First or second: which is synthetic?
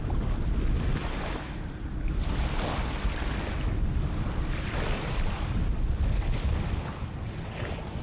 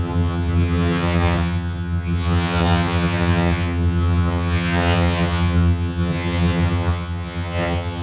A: second